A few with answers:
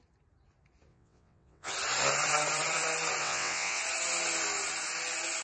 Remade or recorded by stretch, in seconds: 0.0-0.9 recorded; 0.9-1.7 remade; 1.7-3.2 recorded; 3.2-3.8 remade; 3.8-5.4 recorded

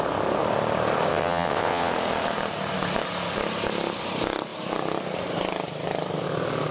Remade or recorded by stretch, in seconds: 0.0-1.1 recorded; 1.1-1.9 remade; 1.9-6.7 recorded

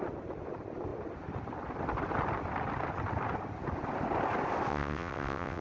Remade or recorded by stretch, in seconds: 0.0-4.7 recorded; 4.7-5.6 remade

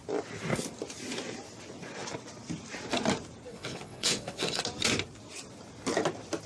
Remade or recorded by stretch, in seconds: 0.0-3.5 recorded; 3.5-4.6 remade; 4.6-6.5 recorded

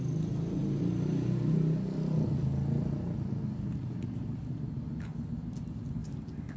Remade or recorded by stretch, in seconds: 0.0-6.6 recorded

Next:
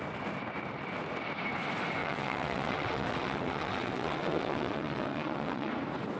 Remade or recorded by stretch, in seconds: 0.0-2.0 recorded; 2.0-5.7 remade; 5.7-6.2 recorded

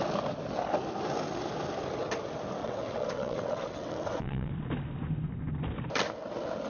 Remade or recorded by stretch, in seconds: 0.0-2.6 recorded; 2.6-4.5 remade; 4.5-6.7 recorded